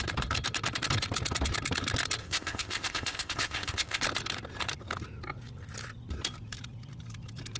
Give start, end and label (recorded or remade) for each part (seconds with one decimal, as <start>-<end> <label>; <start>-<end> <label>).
0.0-2.2 recorded; 2.2-4.0 remade; 4.0-7.6 recorded